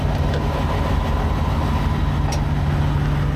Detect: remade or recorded recorded